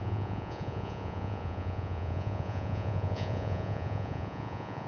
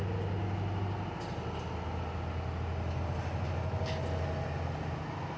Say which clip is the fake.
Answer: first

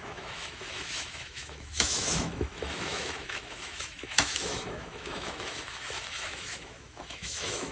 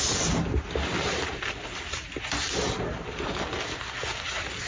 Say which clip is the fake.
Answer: first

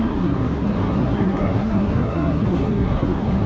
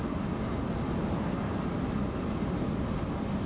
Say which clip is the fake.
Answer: first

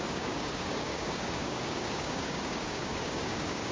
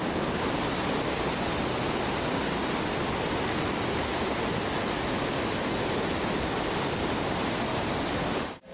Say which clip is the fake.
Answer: first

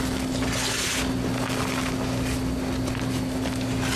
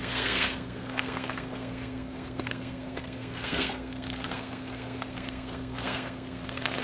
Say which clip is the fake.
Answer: second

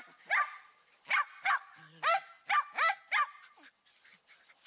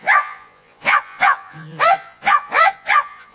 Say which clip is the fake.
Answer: second